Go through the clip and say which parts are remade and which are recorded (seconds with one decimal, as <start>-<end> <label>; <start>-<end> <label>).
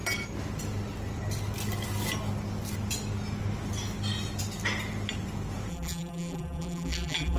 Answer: 0.0-5.7 recorded; 5.7-7.4 remade